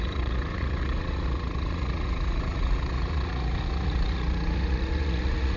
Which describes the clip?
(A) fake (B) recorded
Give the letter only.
A